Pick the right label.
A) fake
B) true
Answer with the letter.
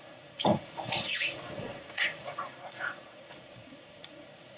A